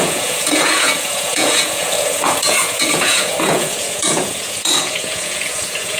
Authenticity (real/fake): fake